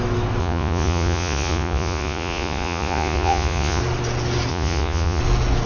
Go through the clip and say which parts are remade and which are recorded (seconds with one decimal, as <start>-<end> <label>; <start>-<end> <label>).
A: 0.0-0.4 recorded; 0.4-3.8 remade; 3.8-4.5 recorded; 4.5-5.2 remade; 5.2-5.7 recorded